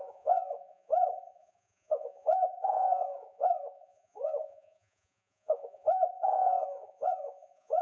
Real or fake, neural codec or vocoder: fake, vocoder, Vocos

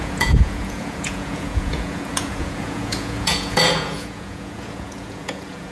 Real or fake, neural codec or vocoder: fake, vocoder, Vocos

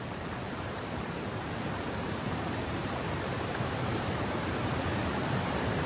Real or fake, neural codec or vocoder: fake, vocoder, BigVGAN v2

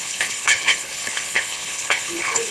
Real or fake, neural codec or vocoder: fake, codec, HILCodec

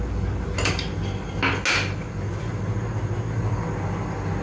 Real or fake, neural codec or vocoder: real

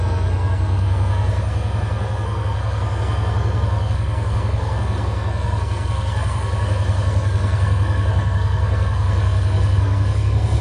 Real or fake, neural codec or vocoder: fake, codec, SNAC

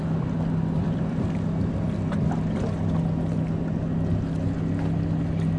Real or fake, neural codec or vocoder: real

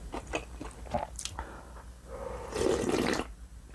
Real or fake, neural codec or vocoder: real